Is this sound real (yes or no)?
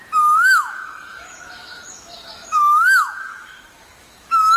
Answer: no